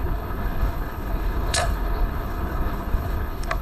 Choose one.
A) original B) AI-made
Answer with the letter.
B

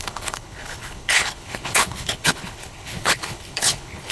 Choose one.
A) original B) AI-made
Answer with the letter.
B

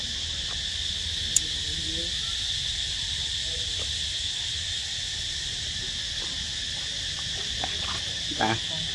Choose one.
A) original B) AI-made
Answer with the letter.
A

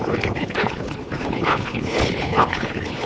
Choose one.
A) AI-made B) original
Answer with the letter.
A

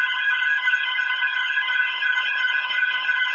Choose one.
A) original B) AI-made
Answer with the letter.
B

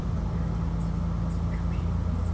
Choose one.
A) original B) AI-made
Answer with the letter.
A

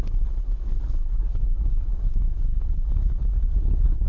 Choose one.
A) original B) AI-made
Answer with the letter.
B